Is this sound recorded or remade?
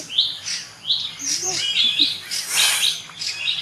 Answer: recorded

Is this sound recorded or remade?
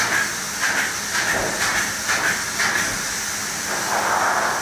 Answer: recorded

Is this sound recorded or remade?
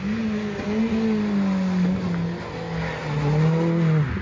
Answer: recorded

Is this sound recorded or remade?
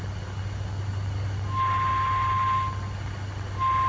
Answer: recorded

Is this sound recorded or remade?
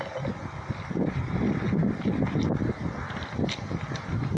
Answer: recorded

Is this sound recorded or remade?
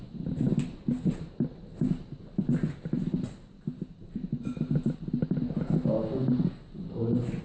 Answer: recorded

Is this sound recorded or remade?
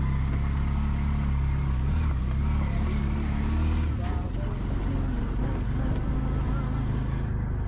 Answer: recorded